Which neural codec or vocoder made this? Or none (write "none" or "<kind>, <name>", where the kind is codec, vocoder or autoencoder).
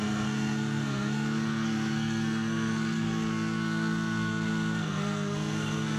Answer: codec, SNAC